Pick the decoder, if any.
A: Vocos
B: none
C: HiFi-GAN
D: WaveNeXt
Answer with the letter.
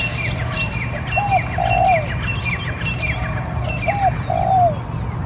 B